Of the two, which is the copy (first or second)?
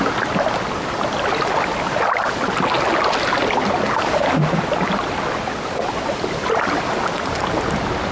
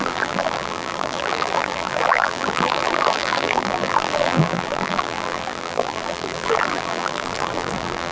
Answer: second